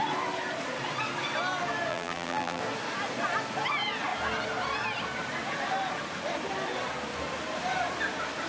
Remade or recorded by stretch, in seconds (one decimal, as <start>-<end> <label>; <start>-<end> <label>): 0.0-1.9 recorded; 1.9-2.6 remade; 2.6-8.5 recorded